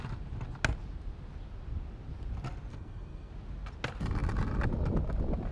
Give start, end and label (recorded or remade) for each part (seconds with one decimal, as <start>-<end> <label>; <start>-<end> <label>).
0.0-2.7 recorded; 2.7-3.3 remade; 3.3-5.5 recorded

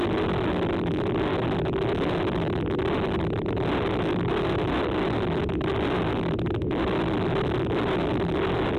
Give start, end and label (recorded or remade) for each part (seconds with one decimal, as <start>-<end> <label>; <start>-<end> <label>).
0.0-8.8 recorded

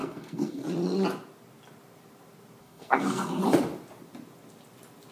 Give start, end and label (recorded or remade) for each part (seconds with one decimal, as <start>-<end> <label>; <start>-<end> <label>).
0.0-0.6 remade; 0.6-2.6 recorded; 2.6-3.4 remade; 3.4-5.1 recorded

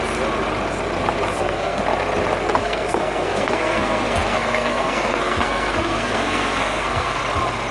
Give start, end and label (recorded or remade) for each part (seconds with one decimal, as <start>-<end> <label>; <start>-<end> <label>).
0.0-1.3 recorded; 1.3-1.8 remade; 1.8-2.6 recorded; 2.6-7.2 remade; 7.2-7.7 recorded